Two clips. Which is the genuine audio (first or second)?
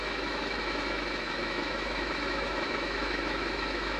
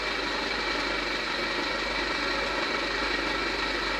second